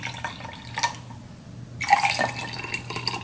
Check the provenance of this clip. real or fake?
real